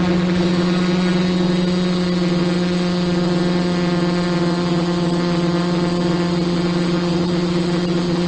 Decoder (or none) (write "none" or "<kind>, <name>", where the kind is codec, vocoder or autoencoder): none